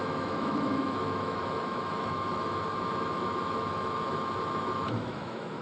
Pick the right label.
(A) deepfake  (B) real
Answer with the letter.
A